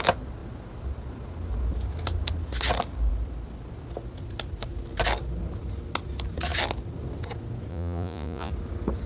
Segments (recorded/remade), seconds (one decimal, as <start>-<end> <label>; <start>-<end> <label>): 0.0-7.7 recorded; 7.7-8.5 remade; 8.5-9.1 recorded